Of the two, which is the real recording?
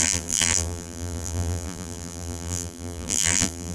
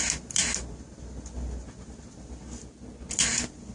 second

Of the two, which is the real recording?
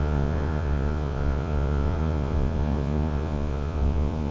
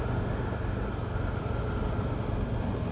second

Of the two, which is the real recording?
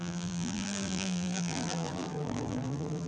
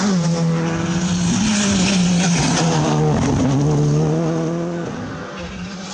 second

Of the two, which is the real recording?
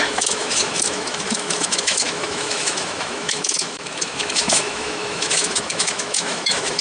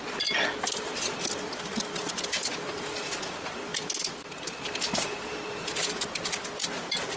second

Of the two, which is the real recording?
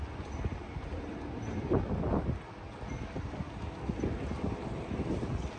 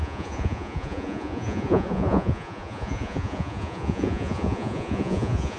first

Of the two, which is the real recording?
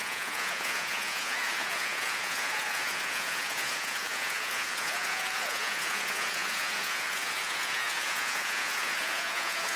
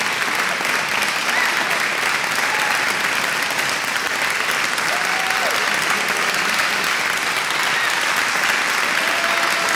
second